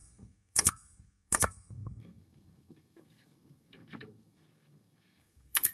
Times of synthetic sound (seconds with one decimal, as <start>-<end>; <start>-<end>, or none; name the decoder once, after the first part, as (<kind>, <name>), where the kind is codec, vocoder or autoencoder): 0.0-5.7 (codec, SNAC)